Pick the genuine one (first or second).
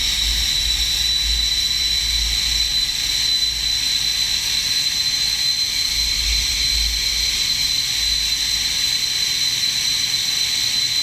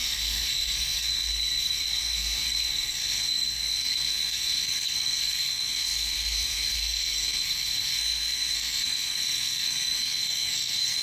first